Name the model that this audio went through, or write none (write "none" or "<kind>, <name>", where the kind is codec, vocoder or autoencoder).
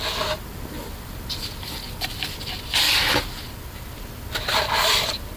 none